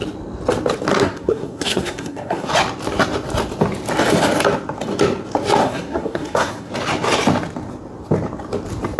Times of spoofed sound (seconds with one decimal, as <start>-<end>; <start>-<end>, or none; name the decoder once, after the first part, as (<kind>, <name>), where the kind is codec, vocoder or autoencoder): 0.9-2.5 (codec, SNAC); 5.6-6.7